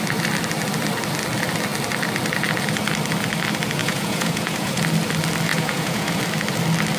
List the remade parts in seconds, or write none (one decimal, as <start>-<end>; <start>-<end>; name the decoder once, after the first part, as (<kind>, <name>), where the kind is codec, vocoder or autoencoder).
3.8-4.8 (vocoder, Vocos); 5.5-6.2